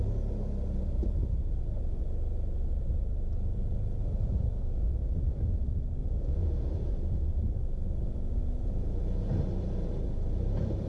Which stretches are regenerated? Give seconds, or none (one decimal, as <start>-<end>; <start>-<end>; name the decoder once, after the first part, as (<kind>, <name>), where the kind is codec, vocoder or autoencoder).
4.0-4.9 (vocoder, Vocos); 6.0-6.9; 7.5-9.3